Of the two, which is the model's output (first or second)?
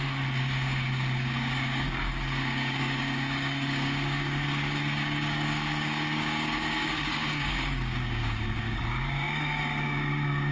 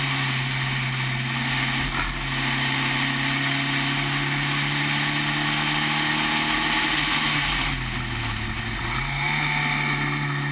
first